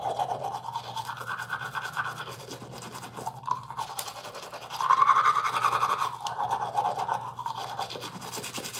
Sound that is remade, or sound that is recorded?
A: recorded